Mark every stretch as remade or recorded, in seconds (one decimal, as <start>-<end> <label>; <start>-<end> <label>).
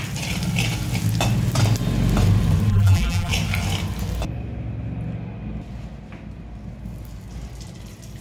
0.0-2.7 recorded; 2.7-3.3 remade; 3.3-8.2 recorded